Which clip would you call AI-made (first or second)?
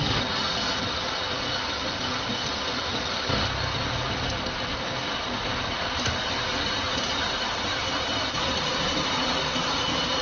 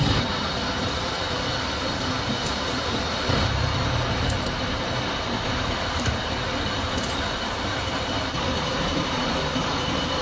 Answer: second